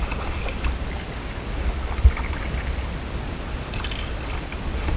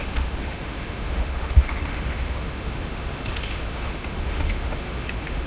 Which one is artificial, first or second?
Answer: second